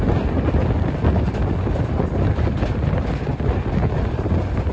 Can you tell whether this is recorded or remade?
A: recorded